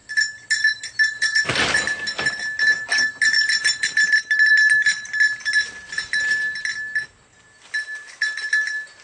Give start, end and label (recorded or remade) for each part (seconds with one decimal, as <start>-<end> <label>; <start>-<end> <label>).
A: 0.0-9.0 recorded